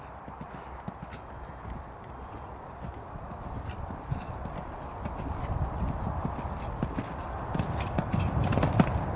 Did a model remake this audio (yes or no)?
no